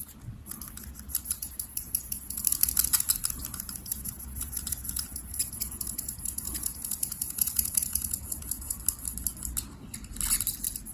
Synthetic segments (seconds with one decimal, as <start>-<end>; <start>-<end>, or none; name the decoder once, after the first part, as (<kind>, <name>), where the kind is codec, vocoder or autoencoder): 1.4-2.4 (vocoder, Vocos); 3.8-8.8